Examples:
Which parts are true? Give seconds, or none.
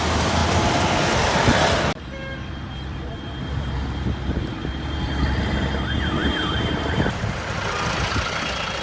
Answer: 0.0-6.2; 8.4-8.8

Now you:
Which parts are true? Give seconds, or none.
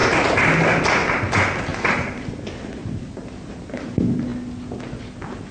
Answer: 0.0-1.7; 2.3-2.8; 3.9-5.5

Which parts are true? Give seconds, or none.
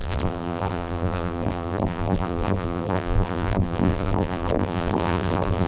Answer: none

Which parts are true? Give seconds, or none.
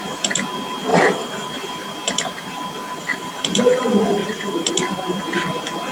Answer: 0.0-0.9; 2.6-3.0; 3.8-4.2; 4.7-5.9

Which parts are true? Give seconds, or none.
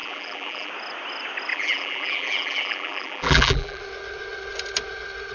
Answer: 0.7-1.5; 3.8-5.3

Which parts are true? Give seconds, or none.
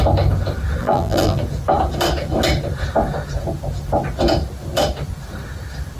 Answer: 0.0-0.8; 1.4-6.0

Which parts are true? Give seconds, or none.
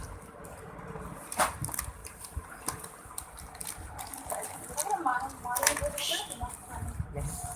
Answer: 0.0-2.0; 2.6-7.6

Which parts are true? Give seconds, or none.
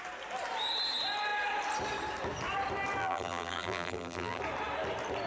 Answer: 0.0-3.0; 4.4-5.3